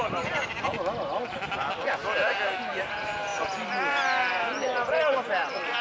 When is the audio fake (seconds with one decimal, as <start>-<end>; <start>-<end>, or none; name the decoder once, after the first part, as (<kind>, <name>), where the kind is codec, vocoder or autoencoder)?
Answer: 0.0-0.7 (vocoder, BigVGAN v2); 1.6-2.0; 2.8-5.8